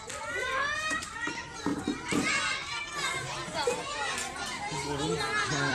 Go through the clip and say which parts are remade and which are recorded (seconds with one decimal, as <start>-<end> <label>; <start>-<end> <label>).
0.0-1.7 remade; 1.7-2.4 recorded; 2.4-2.9 remade; 2.9-5.7 recorded

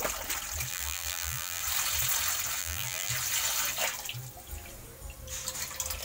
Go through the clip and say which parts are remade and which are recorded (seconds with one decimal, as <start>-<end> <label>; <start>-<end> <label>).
0.0-0.7 recorded; 0.7-1.6 remade; 1.6-2.6 recorded; 2.6-3.1 remade; 3.1-6.0 recorded